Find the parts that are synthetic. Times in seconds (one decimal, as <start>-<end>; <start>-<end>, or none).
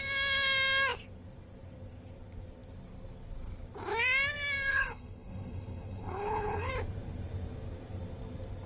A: 4.7-6.7